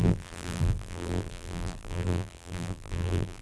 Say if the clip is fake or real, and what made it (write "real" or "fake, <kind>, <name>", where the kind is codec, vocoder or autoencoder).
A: fake, vocoder, BigVGAN v2